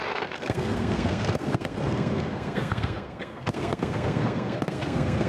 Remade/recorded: remade